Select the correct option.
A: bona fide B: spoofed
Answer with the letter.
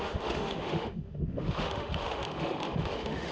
B